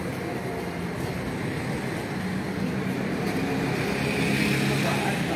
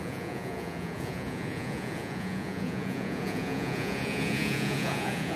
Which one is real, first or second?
first